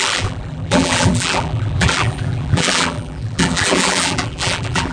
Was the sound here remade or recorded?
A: remade